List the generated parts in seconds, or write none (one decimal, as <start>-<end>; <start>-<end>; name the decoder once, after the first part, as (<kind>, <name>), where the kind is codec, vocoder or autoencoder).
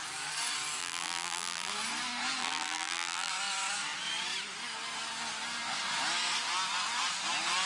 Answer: 0.8-1.7 (vocoder, BigVGAN v2); 2.4-3.3